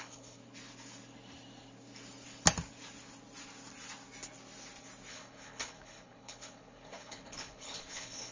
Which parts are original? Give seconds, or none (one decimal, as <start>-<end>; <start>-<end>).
0.4-5.1